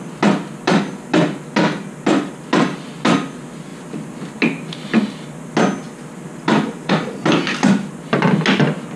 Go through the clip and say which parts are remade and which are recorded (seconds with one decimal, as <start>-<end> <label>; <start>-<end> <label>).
0.0-9.0 recorded